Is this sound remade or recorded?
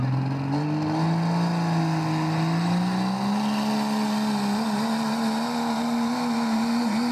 recorded